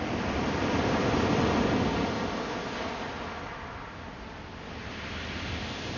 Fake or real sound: real